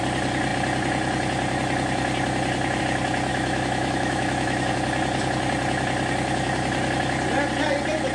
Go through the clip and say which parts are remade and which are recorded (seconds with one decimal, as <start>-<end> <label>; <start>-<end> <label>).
0.0-3.3 recorded; 3.3-4.7 remade; 4.7-8.1 recorded